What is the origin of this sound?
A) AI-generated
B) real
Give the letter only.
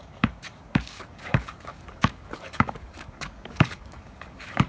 A